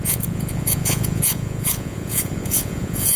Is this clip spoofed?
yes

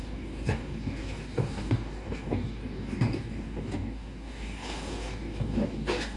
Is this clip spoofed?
yes